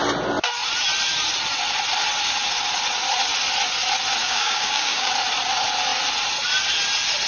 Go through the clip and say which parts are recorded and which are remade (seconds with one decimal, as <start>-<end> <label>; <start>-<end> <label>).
0.0-4.2 recorded; 4.2-5.1 remade; 5.1-7.3 recorded